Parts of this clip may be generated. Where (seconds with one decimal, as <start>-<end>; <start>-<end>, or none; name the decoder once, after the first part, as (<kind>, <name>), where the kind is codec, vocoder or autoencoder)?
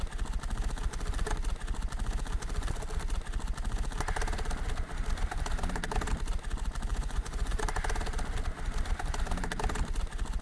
6.9-7.6 (vocoder, Vocos)